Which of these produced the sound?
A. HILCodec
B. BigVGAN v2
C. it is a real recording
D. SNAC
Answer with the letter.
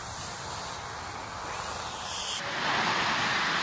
C